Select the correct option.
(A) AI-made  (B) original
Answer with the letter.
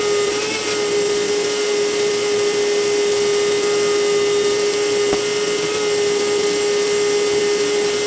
B